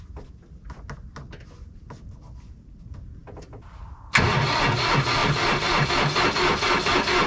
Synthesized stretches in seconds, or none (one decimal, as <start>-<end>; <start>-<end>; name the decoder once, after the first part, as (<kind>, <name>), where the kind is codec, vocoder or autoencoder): 5.2-5.9 (vocoder, BigVGAN v2)